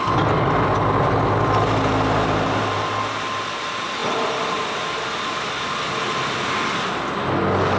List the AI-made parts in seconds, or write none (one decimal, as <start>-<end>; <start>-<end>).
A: none